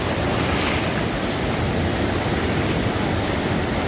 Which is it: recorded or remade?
recorded